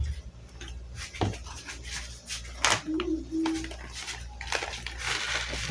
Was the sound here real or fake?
real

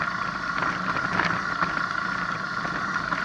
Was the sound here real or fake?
real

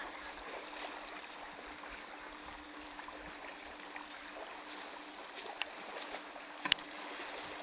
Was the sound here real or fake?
real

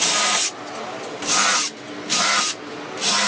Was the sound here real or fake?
real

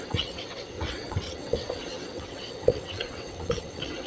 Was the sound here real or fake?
fake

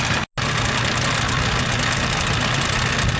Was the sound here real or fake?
real